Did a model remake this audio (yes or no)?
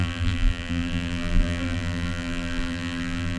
yes